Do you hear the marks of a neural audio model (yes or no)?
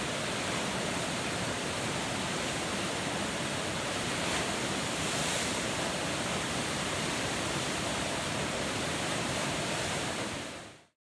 yes